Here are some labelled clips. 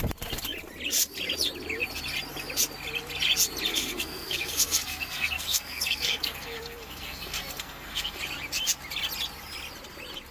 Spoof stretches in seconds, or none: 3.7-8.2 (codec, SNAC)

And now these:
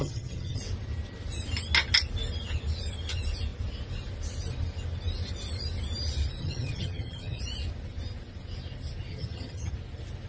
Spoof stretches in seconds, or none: 0.0-0.6 (vocoder, HiFi-GAN); 6.4-7.4; 9.1-9.7

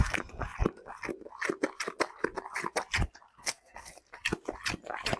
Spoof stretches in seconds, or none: 3.3-3.9 (codec, SNAC)

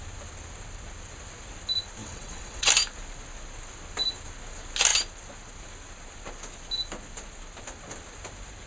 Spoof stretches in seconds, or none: 2.0-2.7 (vocoder, WaveNeXt)

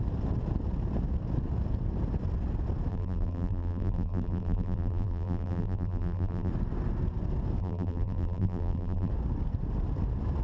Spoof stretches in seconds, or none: 2.9-6.5 (vocoder, BigVGAN v2); 7.6-9.1

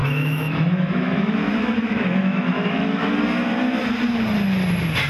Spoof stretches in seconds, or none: 0.0-3.1 (autoencoder, DAC-VAE)